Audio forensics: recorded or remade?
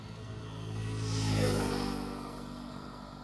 remade